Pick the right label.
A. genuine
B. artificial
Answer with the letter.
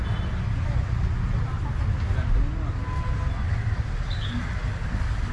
A